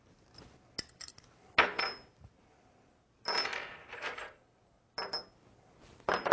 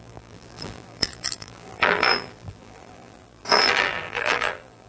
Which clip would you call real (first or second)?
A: first